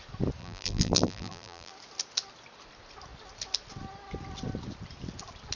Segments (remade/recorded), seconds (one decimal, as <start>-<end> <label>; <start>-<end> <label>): 0.0-0.4 recorded; 0.4-1.7 remade; 1.7-5.6 recorded